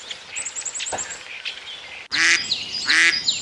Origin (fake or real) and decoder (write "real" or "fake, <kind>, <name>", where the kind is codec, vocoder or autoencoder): real